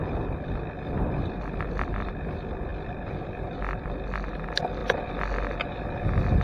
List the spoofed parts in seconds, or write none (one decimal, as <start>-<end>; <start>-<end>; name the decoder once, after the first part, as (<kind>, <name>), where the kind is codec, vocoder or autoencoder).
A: none

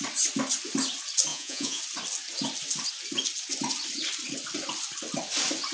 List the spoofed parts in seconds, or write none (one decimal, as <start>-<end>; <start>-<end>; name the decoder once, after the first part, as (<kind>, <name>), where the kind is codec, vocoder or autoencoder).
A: 1.3-1.8 (vocoder, Vocos)

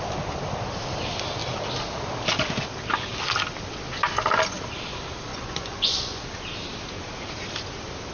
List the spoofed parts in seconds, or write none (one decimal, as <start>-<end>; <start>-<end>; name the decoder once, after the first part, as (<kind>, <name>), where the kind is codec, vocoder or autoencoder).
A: 5.3-6.2 (vocoder, Vocos)

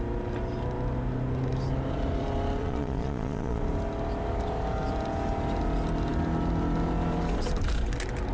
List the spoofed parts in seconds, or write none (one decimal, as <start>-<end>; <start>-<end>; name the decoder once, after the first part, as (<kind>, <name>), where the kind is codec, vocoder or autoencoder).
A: 2.6-3.6 (vocoder, Vocos)